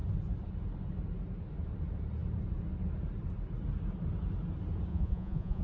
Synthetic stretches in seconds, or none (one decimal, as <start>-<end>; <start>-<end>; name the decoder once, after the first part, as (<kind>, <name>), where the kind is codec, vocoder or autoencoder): 4.9-5.6 (vocoder, Vocos)